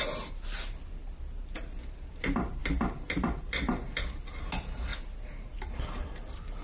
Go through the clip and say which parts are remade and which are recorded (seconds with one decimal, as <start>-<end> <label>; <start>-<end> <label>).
0.0-4.9 remade; 4.9-6.0 recorded; 6.0-6.6 remade